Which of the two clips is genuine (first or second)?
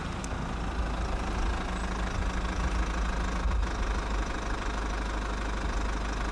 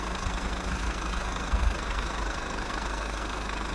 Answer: first